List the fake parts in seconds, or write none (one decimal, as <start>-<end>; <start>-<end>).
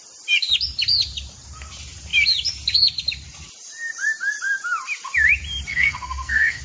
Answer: 5.7-6.6